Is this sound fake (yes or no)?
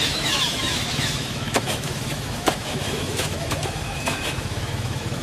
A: yes